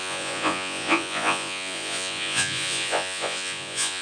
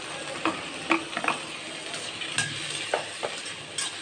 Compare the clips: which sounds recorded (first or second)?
second